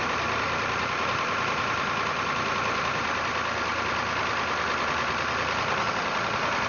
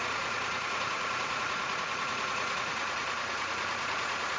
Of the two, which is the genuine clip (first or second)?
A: first